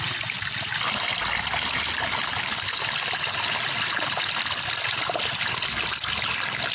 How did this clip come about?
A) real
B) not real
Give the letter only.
A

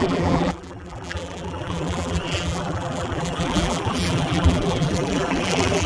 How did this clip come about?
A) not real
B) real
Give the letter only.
A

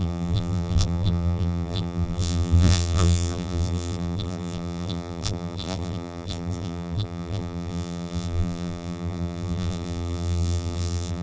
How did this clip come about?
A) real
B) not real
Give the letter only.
B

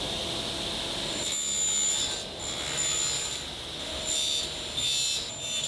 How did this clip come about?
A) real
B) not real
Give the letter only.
A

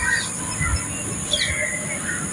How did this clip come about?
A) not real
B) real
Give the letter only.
B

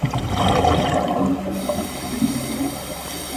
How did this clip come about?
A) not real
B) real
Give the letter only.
B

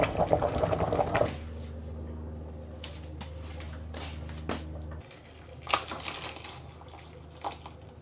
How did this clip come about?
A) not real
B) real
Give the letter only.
B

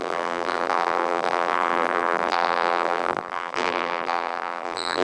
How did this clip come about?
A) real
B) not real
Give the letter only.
B